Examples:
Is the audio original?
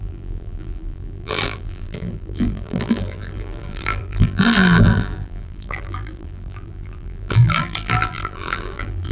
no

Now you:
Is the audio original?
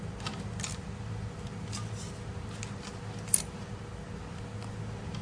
yes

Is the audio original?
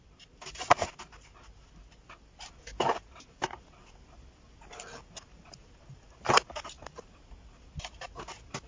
yes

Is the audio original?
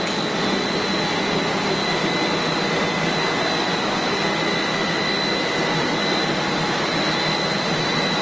yes